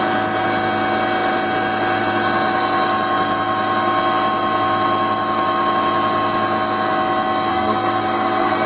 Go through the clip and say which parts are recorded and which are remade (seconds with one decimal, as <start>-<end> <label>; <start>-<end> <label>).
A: 0.0-7.5 recorded; 7.5-8.7 remade